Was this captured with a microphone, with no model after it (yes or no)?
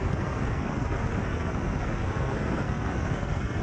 no